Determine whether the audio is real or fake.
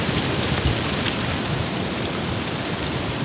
real